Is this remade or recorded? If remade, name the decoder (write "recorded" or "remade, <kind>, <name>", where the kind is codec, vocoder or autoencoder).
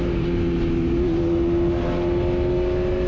recorded